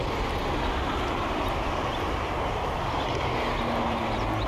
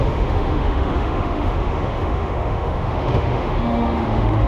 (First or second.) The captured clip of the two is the first